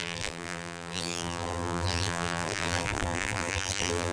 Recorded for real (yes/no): no